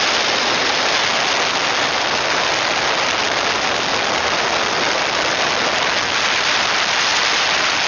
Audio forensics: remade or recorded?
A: recorded